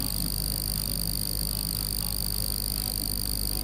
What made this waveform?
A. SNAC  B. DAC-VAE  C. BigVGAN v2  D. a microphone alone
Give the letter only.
D